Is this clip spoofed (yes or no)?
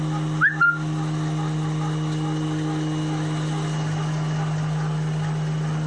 no